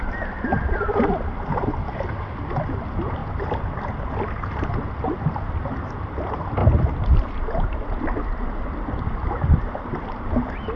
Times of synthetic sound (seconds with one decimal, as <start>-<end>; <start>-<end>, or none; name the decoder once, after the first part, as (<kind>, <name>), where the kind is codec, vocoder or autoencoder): none